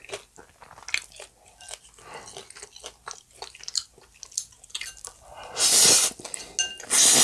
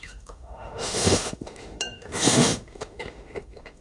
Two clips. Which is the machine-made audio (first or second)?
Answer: second